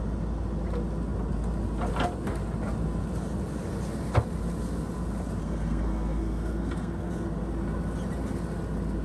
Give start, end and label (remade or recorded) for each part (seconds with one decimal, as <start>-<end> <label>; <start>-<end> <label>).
0.0-5.4 recorded; 5.4-7.1 remade; 7.1-9.0 recorded